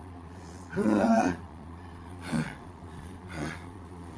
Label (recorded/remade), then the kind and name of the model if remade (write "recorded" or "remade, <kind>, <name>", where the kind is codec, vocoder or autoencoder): remade, vocoder, Vocos